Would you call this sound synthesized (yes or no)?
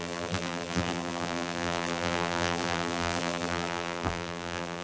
yes